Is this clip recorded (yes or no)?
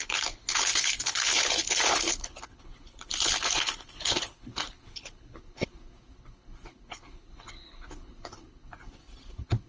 no